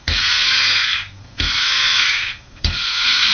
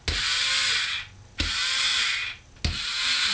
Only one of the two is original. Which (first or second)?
second